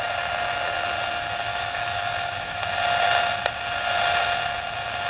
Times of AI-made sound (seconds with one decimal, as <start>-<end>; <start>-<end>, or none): 1.5-2.6